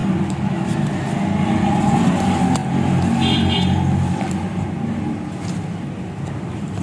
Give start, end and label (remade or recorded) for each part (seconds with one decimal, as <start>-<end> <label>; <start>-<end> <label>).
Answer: 0.0-6.8 recorded